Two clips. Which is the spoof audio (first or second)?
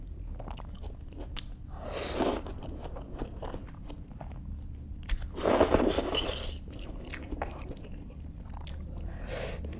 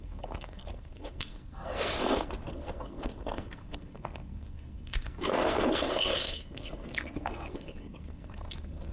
second